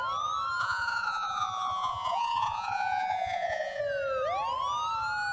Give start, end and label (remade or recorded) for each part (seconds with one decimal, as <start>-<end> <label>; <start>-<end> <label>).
0.0-0.6 recorded; 0.6-3.8 remade; 3.8-5.3 recorded